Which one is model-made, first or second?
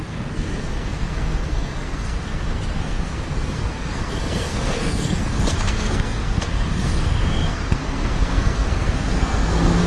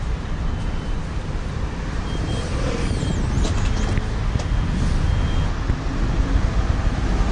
first